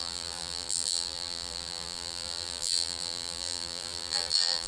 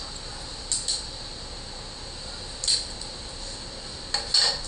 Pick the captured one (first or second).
second